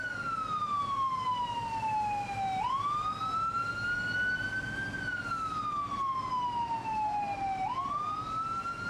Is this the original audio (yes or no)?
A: yes